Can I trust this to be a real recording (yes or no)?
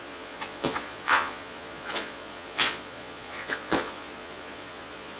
no